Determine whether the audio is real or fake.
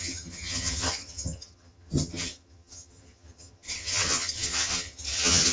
fake